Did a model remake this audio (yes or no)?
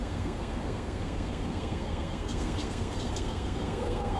yes